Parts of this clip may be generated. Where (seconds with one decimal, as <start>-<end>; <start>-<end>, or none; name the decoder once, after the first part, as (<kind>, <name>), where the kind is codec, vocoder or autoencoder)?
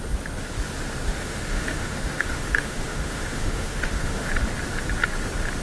1.1-4.3 (autoencoder, DAC-VAE)